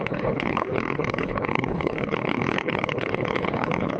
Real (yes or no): no